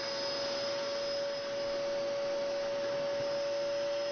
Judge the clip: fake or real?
real